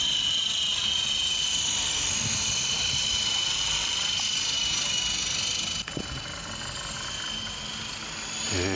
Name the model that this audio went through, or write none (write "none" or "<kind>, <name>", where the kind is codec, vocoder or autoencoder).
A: none